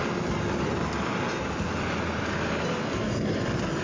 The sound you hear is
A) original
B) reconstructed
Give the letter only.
A